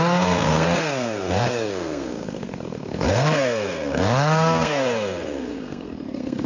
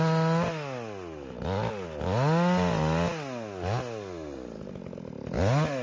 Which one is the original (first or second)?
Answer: second